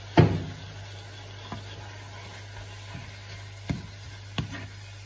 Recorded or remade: recorded